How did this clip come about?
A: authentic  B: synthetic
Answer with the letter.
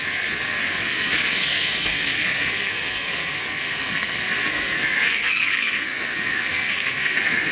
B